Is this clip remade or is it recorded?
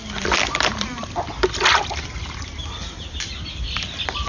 recorded